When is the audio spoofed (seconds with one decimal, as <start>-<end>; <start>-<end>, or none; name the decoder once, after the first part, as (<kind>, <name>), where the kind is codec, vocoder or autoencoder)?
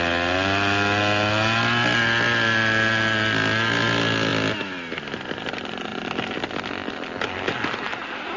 none